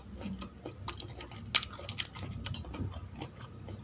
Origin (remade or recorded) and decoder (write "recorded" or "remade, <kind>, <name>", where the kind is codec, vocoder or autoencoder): recorded